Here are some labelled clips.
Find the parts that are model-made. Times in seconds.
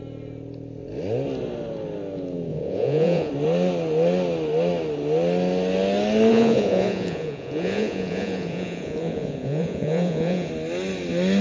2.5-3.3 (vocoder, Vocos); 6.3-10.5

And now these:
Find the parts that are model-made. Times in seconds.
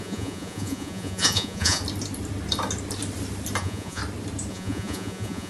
0.0-1.8 (vocoder, Vocos); 3.6-4.0; 4.5-5.5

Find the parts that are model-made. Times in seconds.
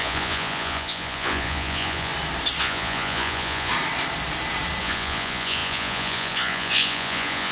0.0-2.1 (vocoder, Vocos); 2.6-3.7; 4.8-7.5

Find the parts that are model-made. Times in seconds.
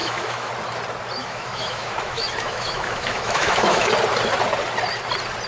0.0-0.5 (autoencoder, DAC-VAE); 1.2-3.9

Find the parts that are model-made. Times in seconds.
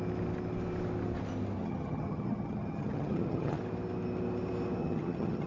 1.6-3.6 (vocoder, HiFi-GAN); 4.8-5.5